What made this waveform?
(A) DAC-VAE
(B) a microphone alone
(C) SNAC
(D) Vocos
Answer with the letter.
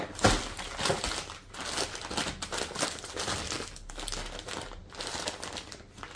B